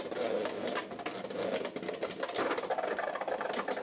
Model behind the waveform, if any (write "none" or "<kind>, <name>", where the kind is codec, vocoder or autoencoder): none